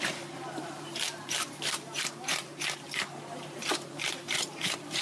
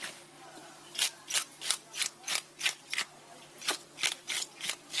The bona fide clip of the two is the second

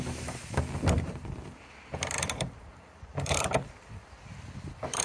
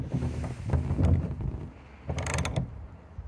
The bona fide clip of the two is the second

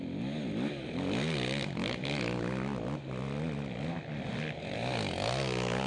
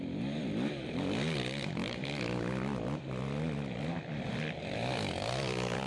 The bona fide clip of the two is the first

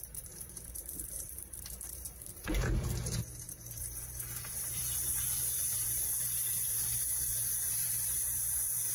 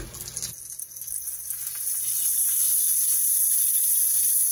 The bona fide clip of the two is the second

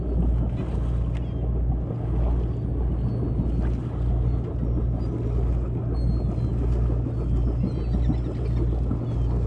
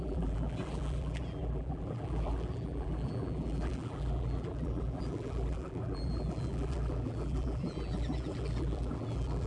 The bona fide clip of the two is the first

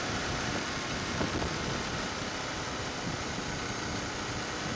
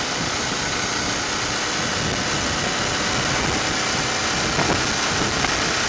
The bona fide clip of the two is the second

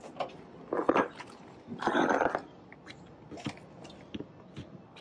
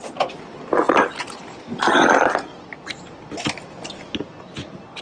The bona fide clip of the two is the first